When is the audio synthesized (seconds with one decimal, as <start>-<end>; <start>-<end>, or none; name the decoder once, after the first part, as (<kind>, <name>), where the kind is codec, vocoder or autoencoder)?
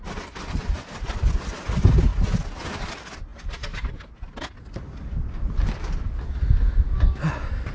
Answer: none